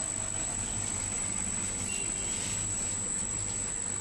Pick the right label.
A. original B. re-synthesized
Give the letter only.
A